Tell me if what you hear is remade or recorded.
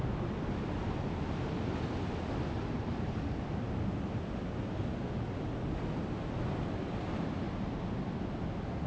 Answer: recorded